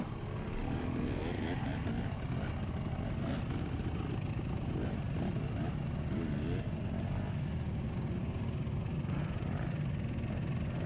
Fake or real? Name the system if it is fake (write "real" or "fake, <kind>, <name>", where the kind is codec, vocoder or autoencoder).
real